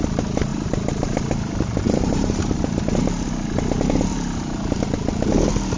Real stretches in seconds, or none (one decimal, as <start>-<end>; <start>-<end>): 0.0-0.5; 3.0-5.8